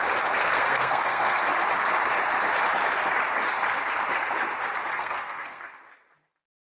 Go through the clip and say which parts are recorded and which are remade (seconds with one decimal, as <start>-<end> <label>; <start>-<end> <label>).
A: 0.0-0.4 recorded; 0.4-1.4 remade; 1.4-4.9 recorded; 4.9-5.7 remade; 5.7-6.8 recorded